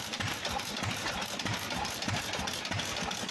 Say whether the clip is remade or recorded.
remade